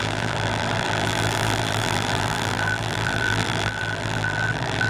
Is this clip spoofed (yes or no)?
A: yes